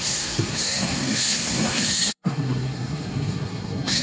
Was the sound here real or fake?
fake